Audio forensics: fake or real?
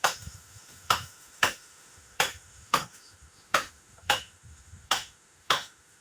fake